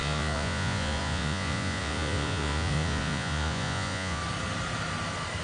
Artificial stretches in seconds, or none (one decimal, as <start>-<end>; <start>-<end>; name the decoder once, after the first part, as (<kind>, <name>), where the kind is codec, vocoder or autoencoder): 0.0-4.2 (vocoder, Vocos)